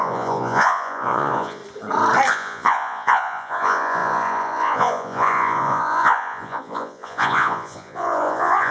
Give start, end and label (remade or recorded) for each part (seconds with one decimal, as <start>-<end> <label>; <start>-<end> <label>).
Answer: 0.0-1.6 remade; 1.6-2.3 recorded; 2.3-8.7 remade